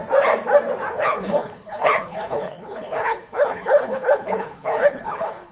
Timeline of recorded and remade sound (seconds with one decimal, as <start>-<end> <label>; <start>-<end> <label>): 0.0-0.9 recorded; 0.9-5.5 remade